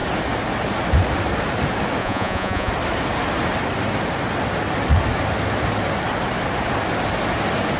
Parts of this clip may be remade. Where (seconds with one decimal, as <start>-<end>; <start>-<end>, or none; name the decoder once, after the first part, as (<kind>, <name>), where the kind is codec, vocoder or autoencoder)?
2.0-2.7 (vocoder, Vocos)